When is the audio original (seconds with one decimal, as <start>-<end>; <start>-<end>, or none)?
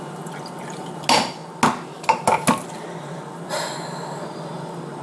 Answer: 0.0-5.0